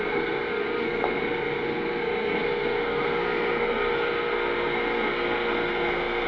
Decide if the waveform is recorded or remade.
remade